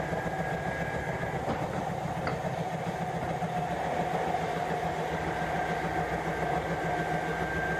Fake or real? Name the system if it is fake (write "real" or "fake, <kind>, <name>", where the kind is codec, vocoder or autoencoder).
real